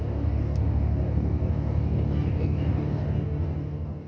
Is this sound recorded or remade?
remade